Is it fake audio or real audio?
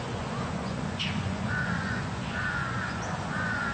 fake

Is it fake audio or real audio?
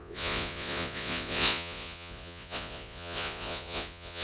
fake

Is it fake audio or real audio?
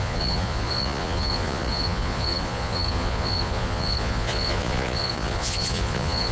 fake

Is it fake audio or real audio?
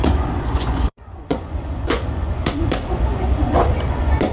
fake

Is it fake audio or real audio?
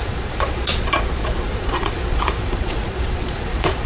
fake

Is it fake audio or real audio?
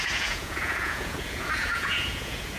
fake